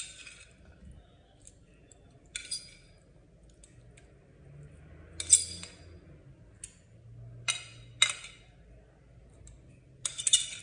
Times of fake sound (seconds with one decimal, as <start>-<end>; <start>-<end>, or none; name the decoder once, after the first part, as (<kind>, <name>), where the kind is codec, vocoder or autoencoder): none

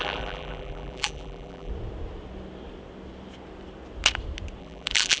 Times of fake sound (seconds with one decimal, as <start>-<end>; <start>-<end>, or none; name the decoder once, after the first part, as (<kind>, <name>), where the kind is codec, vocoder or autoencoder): 0.0-1.7 (vocoder, BigVGAN v2); 4.6-5.2

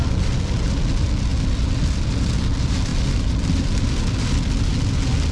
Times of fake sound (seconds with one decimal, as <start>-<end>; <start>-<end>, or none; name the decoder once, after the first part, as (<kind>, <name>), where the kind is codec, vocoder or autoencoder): none

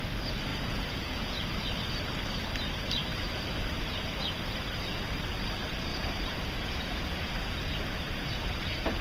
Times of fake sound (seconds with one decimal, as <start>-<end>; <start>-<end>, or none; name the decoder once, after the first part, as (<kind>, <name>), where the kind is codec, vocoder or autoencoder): 0.5-1.5 (vocoder, Vocos); 5.9-7.3

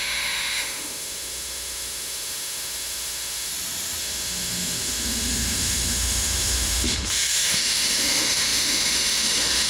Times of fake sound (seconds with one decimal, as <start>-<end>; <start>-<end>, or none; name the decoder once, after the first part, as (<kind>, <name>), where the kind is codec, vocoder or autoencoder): 0.0-3.5 (autoencoder, DAC-VAE); 4.0-9.7

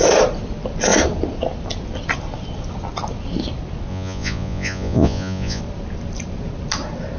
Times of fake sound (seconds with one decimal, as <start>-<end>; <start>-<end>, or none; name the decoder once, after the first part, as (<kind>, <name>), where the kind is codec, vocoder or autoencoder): 3.9-5.6 (vocoder, Vocos)

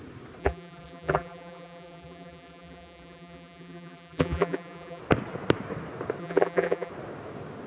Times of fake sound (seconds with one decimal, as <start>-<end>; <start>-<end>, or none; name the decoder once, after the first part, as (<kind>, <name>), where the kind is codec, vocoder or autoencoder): 0.4-5.0 (vocoder, BigVGAN v2); 6.2-6.9

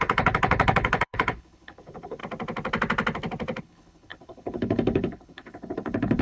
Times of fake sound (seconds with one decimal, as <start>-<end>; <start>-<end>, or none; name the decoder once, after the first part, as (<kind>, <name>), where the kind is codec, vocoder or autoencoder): 0.0-2.2 (codec, HILCodec); 3.6-6.2